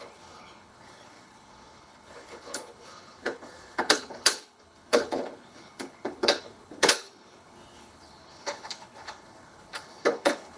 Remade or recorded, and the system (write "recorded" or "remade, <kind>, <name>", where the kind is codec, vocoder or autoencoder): remade, codec, HILCodec